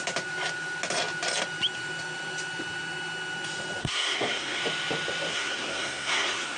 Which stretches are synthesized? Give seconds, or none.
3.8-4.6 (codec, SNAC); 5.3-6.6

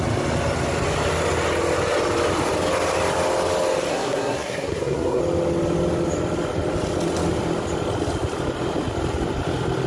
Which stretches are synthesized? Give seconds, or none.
3.9-5.2 (codec, SNAC)

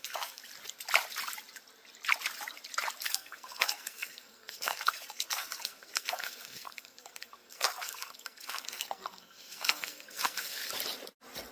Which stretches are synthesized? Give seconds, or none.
0.0-0.4 (codec, SNAC); 3.1-10.6